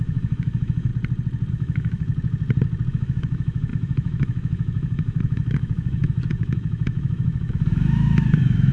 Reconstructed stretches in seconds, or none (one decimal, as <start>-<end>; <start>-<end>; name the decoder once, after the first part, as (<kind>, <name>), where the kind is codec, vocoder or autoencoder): 0.0-0.9 (autoencoder, DAC-VAE); 1.5-2.1; 2.9-8.7

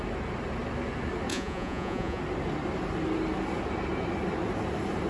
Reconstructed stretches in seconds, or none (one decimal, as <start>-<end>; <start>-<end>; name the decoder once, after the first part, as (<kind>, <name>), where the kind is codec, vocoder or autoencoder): 1.3-2.2 (vocoder, Vocos)

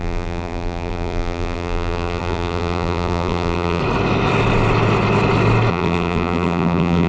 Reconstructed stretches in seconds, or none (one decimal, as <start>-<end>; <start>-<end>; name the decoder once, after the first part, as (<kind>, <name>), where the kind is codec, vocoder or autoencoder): 0.0-3.8 (vocoder, BigVGAN v2); 5.7-7.1

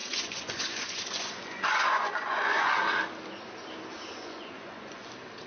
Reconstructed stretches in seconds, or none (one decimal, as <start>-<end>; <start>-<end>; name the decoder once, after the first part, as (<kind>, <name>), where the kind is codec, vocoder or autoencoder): 0.0-2.8 (vocoder, Vocos); 4.1-5.1

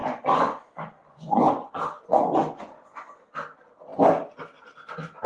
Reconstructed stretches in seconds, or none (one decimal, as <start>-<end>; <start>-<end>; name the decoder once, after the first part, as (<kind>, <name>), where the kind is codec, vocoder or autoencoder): 0.0-3.2 (vocoder, Vocos)

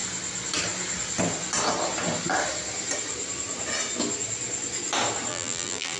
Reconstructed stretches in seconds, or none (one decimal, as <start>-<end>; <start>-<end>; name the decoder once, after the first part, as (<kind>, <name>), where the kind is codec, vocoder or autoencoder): 5.3-6.0 (vocoder, BigVGAN v2)